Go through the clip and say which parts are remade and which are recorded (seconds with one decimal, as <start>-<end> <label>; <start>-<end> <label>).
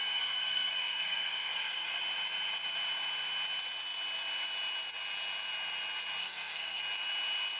0.0-2.0 remade; 2.0-6.2 recorded; 6.2-6.8 remade; 6.8-7.6 recorded